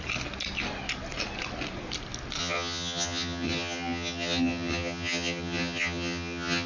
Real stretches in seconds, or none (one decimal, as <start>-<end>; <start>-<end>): 0.0-2.4